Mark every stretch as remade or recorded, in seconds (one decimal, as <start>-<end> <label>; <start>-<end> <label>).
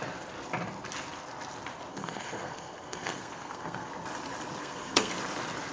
0.0-1.9 recorded; 1.9-3.9 remade; 3.9-4.6 recorded; 4.6-5.1 remade; 5.1-5.7 recorded